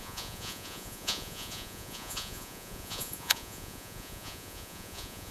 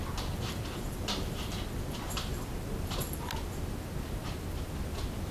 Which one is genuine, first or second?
second